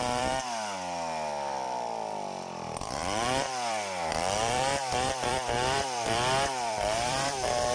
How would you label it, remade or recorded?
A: remade